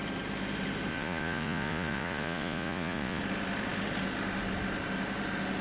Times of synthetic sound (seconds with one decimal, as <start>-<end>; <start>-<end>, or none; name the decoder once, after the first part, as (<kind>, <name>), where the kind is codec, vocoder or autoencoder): 0.9-3.2 (vocoder, Vocos)

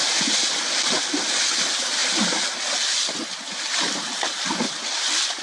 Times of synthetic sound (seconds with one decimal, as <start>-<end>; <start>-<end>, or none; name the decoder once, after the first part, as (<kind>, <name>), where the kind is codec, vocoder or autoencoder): none